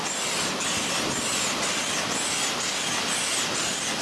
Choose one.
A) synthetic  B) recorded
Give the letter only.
B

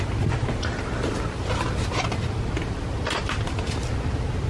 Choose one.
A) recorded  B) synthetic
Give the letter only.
A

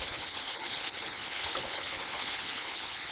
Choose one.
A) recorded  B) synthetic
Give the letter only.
B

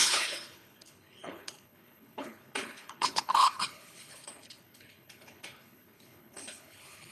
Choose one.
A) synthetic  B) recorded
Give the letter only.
A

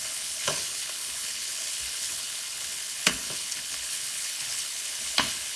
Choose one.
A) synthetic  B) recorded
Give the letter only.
A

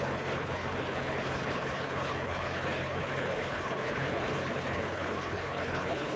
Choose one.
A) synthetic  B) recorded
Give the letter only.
A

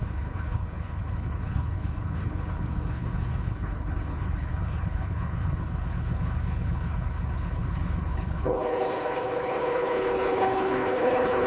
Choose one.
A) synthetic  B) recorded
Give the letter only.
A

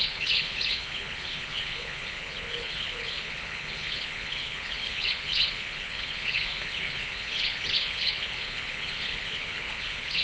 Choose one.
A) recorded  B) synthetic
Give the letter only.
B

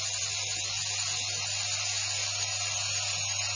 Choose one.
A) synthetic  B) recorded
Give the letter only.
B